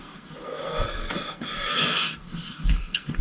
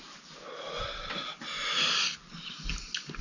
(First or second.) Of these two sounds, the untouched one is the second